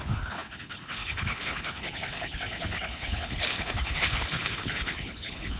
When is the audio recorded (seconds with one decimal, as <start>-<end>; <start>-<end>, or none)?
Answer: none